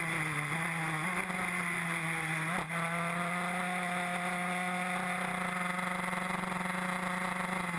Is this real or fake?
real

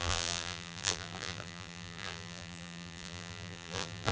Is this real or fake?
fake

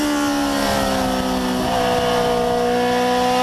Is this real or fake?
real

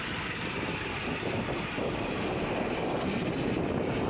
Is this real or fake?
fake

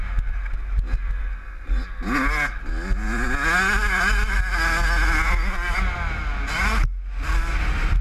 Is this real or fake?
real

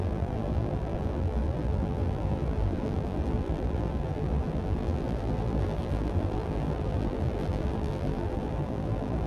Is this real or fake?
fake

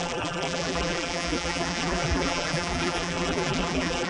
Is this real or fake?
fake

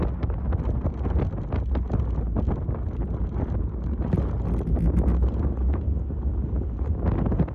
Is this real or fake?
real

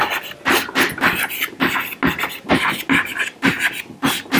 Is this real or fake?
real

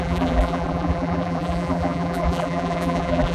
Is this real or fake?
fake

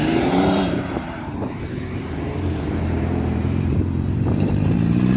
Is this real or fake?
fake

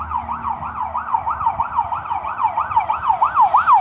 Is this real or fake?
real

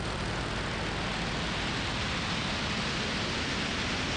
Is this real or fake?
real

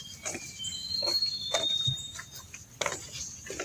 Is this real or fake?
fake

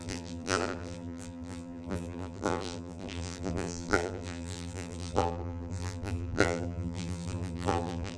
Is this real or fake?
fake